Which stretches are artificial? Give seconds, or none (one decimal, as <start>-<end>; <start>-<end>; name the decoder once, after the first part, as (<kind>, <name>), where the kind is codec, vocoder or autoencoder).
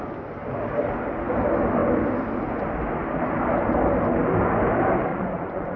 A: 5.1-5.8 (vocoder, Vocos)